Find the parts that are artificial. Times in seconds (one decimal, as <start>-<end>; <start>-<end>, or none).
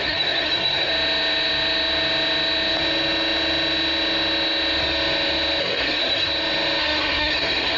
0.0-0.9; 5.6-6.3; 6.8-7.8